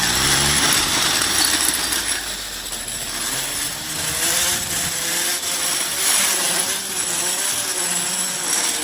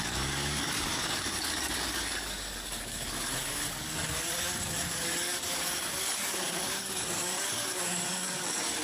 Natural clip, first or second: first